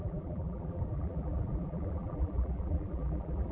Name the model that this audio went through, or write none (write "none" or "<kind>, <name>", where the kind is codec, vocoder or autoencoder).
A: vocoder, BigVGAN v2